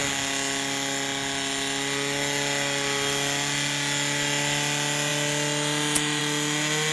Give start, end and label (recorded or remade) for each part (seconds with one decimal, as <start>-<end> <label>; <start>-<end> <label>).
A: 0.0-6.9 recorded